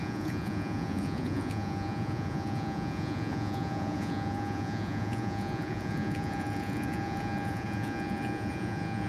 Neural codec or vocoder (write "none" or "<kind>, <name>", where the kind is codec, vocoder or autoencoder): vocoder, Vocos